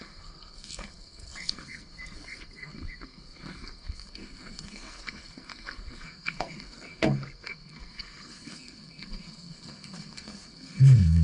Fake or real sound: fake